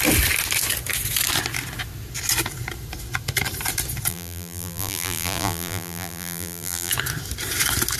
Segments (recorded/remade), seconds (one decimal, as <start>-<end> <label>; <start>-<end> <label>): 0.0-4.1 recorded; 4.1-6.9 remade; 6.9-8.0 recorded